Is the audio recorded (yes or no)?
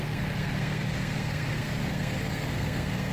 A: no